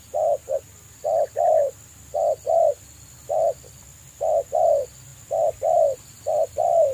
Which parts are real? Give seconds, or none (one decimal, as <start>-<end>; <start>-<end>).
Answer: 0.0-5.1; 6.2-6.9